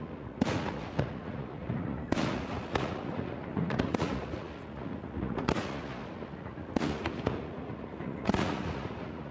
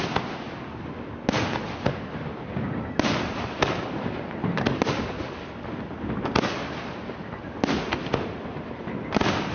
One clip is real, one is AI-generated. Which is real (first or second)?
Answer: second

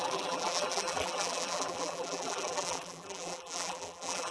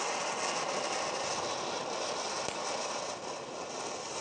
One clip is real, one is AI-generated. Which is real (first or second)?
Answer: second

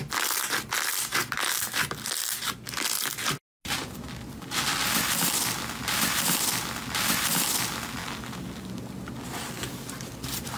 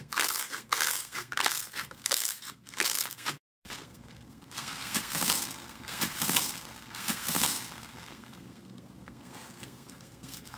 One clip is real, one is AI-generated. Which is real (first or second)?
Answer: first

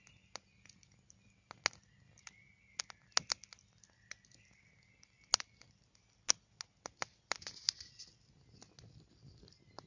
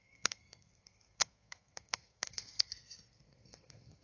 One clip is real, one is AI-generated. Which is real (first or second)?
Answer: first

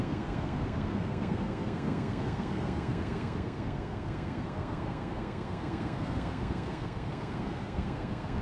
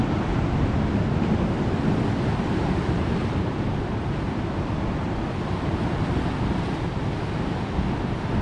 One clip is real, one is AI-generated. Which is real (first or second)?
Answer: second